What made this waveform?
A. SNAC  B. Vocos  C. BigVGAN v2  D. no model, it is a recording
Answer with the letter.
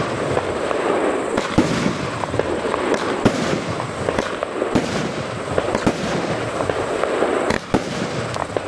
C